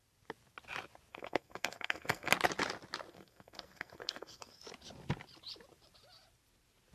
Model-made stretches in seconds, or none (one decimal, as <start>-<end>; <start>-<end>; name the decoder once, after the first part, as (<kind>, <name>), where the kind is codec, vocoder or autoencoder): 1.1-2.3 (codec, SNAC); 3.1-4.6